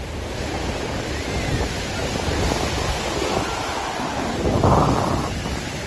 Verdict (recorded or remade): recorded